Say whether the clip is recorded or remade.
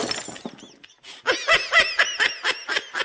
recorded